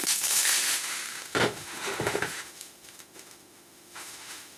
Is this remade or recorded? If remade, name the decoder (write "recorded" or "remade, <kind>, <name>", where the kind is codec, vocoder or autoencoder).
remade, autoencoder, DAC-VAE